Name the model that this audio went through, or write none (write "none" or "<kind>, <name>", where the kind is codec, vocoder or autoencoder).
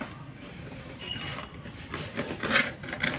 none